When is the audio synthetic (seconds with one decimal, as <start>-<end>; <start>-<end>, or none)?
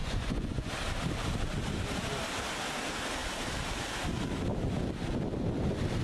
0.0-0.7